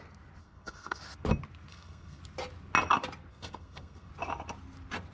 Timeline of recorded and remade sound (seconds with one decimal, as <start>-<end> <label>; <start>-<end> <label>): 0.0-0.4 recorded; 0.4-1.0 remade; 1.0-1.7 recorded; 1.7-2.2 remade; 2.2-3.3 recorded; 3.3-4.1 remade; 4.1-5.1 recorded